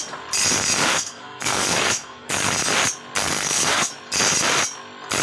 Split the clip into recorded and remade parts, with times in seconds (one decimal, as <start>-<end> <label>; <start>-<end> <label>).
0.0-0.9 recorded; 0.9-2.3 remade; 2.3-3.2 recorded; 3.2-3.9 remade; 3.9-5.2 recorded